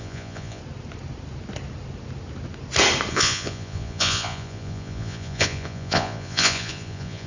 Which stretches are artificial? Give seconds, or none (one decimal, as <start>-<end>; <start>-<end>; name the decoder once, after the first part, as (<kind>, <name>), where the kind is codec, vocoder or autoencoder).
0.0-0.6 (vocoder, Vocos); 3.1-7.3